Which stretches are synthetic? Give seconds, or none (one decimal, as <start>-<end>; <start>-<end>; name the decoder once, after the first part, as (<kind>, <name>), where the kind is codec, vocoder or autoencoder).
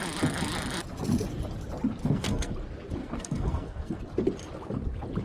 2.0-2.5 (codec, SNAC); 3.0-4.0